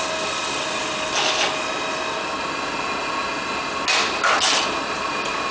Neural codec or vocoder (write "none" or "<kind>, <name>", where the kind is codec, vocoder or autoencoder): none